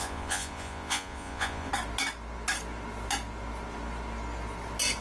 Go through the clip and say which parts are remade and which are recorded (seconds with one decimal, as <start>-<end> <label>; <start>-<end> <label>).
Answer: 0.0-1.7 remade; 1.7-5.0 recorded

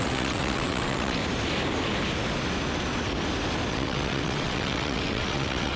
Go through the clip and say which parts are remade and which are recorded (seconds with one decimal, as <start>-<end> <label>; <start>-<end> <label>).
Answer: 0.0-1.2 remade; 1.2-3.7 recorded; 3.7-5.8 remade

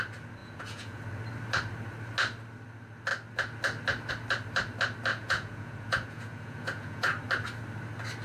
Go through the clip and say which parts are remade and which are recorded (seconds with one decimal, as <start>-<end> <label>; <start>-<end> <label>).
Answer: 0.0-0.4 recorded; 0.4-1.0 remade; 1.0-5.1 recorded; 5.1-7.1 remade; 7.1-8.2 recorded

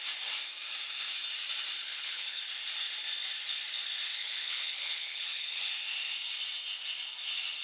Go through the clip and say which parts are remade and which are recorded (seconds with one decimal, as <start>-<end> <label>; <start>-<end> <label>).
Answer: 0.0-1.8 recorded; 1.8-2.4 remade; 2.4-4.2 recorded; 4.2-5.7 remade; 5.7-7.6 recorded

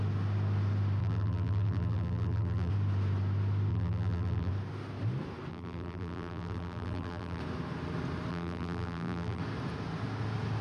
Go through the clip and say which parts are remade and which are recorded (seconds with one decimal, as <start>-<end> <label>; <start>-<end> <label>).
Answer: 0.0-1.0 recorded; 1.0-2.7 remade; 2.7-3.7 recorded; 3.7-4.5 remade; 4.5-5.5 recorded; 5.5-7.4 remade; 7.4-8.3 recorded; 8.3-9.4 remade; 9.4-10.6 recorded